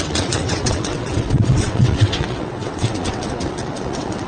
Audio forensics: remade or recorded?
remade